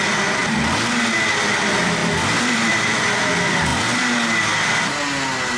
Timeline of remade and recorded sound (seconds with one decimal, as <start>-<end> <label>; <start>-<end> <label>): 0.0-2.0 recorded; 2.0-3.3 remade; 3.3-5.6 recorded